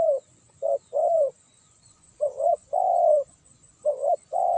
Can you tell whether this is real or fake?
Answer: fake